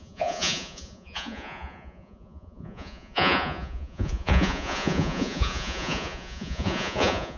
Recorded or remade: remade